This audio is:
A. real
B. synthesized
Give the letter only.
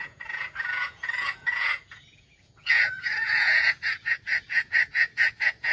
B